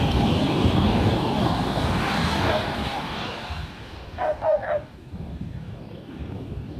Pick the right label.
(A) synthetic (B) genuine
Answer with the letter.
A